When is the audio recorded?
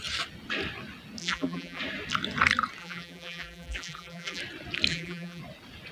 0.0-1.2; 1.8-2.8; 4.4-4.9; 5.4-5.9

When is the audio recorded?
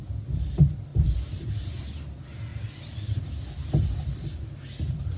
0.0-0.9; 1.8-5.2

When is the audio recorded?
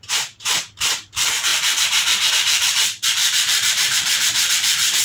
none